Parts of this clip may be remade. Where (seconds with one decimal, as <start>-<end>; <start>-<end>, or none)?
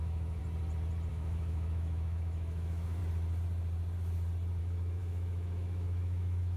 0.0-0.4; 1.1-3.0; 4.6-6.6